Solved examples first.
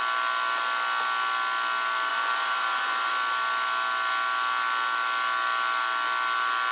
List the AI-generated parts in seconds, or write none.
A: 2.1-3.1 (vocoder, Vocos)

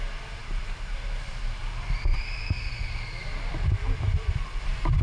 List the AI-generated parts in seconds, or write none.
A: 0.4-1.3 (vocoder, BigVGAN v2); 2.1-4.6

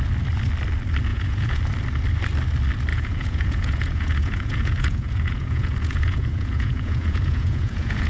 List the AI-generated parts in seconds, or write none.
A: 1.1-1.6 (vocoder, Vocos); 2.9-8.1